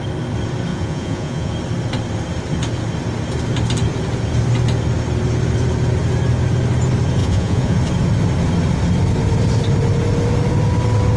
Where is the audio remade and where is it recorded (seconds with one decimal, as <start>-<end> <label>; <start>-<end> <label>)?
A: 0.0-0.7 recorded; 0.7-1.5 remade; 1.5-7.2 recorded; 7.2-7.8 remade; 7.8-11.2 recorded